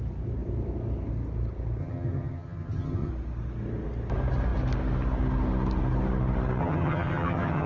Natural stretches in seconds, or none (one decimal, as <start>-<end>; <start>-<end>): 0.0-1.8; 3.1-6.6